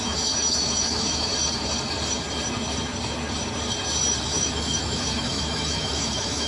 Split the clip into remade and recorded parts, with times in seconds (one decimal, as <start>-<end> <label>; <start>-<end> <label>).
0.0-1.3 remade; 1.3-4.2 recorded; 4.2-6.5 remade

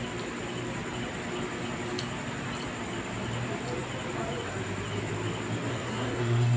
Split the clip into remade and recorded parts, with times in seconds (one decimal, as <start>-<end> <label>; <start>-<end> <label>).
0.0-5.7 recorded; 5.7-6.6 remade

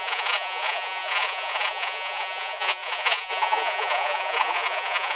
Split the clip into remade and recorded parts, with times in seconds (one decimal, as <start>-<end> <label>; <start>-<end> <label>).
0.0-5.2 remade

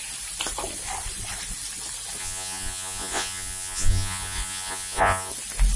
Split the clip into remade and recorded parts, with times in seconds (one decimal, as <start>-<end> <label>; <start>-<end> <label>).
0.0-2.2 recorded; 2.2-5.3 remade; 5.3-5.8 recorded

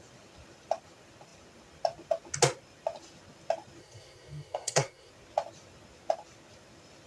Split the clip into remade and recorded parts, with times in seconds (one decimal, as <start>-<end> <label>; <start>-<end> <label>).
0.0-3.8 recorded; 3.8-5.1 remade; 5.1-7.1 recorded

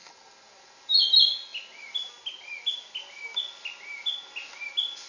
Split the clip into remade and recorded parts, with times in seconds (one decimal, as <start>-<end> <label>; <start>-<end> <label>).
0.0-5.1 recorded